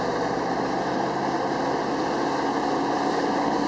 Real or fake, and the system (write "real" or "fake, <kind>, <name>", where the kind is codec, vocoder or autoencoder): real